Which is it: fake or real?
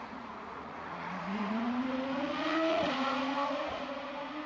fake